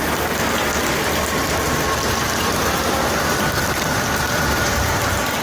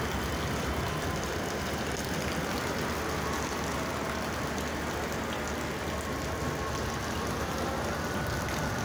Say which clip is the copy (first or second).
first